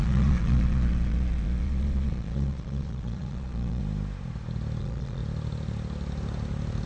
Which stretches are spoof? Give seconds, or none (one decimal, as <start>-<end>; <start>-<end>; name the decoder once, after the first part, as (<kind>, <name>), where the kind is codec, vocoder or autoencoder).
0.0-3.8 (vocoder, Vocos); 4.8-5.2